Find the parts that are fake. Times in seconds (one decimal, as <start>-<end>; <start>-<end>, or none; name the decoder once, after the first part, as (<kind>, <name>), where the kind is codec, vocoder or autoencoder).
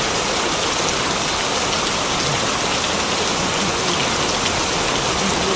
3.3-3.8 (vocoder, Vocos)